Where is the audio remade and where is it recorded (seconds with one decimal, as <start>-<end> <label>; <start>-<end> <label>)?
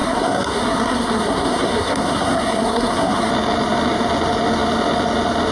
0.0-3.3 remade; 3.3-5.5 recorded